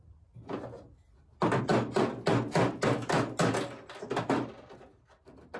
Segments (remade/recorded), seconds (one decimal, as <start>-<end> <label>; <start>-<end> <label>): 0.0-5.6 recorded